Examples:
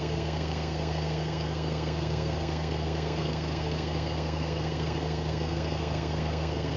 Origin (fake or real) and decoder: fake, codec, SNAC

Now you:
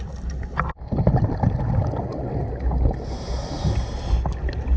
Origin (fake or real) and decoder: real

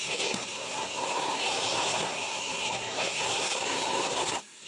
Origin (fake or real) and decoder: fake, codec, SNAC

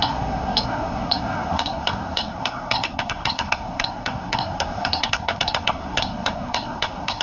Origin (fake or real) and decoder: fake, codec, SNAC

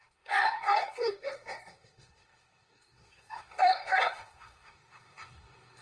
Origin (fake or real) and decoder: fake, codec, SNAC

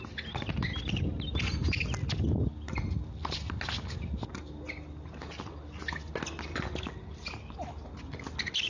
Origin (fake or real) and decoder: real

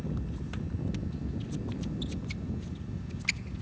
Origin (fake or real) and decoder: real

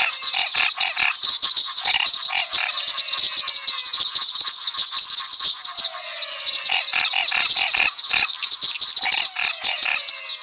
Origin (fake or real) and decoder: real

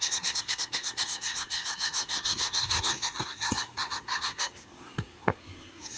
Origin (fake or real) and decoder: fake, codec, SNAC